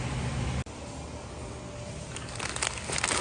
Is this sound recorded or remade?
recorded